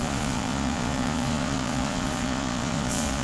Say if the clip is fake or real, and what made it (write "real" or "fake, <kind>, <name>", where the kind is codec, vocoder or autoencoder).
fake, vocoder, Vocos